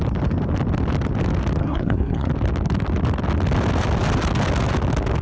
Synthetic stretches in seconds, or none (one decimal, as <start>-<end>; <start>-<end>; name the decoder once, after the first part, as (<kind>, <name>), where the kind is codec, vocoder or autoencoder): 1.6-2.3 (codec, SNAC)